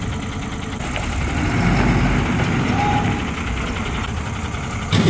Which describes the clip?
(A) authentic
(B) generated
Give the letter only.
A